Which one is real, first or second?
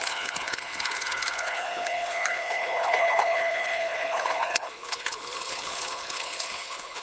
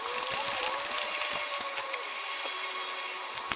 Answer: second